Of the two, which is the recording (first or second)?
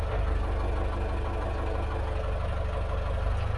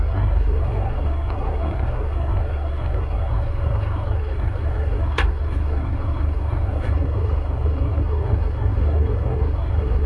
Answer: first